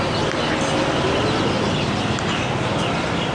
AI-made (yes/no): no